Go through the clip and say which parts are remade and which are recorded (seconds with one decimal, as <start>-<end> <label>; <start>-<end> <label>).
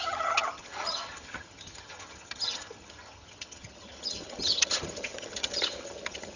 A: 0.0-6.4 remade